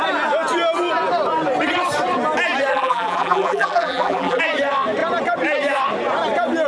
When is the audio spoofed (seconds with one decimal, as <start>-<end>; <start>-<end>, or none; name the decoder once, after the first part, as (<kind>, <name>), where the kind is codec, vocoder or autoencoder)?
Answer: 2.7-4.4 (vocoder, BigVGAN v2)